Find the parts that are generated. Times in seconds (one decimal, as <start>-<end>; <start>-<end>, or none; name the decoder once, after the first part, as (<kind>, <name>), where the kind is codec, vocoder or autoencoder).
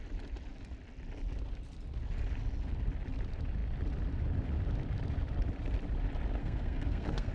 6.4-7.3 (codec, SNAC)